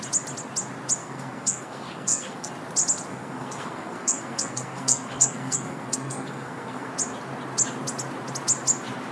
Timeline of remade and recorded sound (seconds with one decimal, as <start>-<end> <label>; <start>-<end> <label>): 0.0-1.0 recorded; 1.0-2.5 remade; 2.5-3.1 recorded; 3.1-6.9 remade; 6.9-9.1 recorded